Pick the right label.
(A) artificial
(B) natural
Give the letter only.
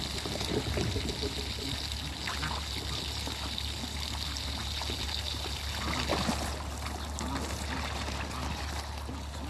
B